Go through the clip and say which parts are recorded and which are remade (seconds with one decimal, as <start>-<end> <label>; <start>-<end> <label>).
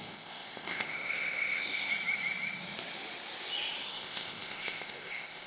0.0-1.9 remade; 1.9-3.9 recorded; 3.9-5.5 remade